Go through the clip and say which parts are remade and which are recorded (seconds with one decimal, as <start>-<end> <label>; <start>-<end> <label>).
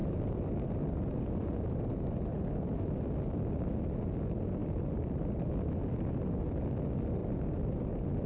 0.0-1.5 remade; 1.5-2.3 recorded; 2.3-3.0 remade; 3.0-4.6 recorded; 4.6-5.9 remade; 5.9-7.2 recorded; 7.2-7.8 remade; 7.8-8.3 recorded